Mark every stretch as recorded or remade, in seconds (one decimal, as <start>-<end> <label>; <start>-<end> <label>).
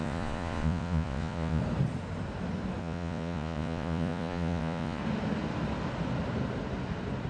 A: 0.0-1.6 remade; 1.6-2.8 recorded; 2.8-5.0 remade; 5.0-7.3 recorded